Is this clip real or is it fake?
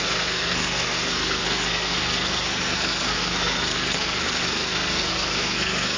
fake